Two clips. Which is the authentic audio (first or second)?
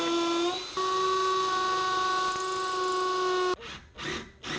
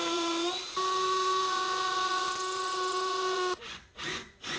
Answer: first